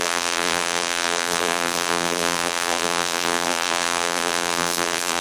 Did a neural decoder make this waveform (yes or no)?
yes